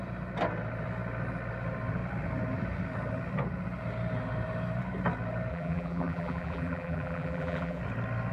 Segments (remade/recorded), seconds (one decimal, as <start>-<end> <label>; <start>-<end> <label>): 0.0-5.5 recorded; 5.5-7.8 remade; 7.8-8.3 recorded